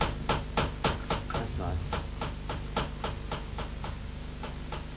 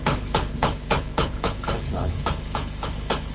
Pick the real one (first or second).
first